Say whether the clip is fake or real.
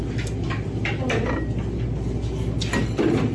real